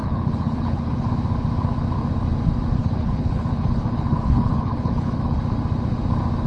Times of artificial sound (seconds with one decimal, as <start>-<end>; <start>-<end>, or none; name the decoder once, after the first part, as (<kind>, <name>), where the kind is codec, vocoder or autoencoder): 0.0-1.1 (codec, HILCodec); 2.8-5.4